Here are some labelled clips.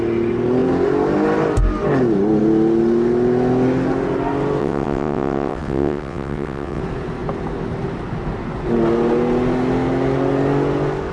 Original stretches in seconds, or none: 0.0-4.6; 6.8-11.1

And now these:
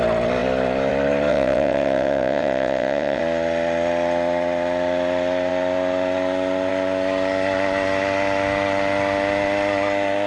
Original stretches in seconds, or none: 0.0-1.3; 3.2-10.3

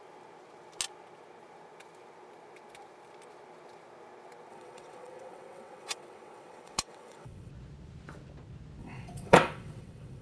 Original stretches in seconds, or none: 0.0-4.5; 7.5-8.8